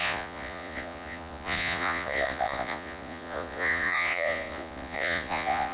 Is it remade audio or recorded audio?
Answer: remade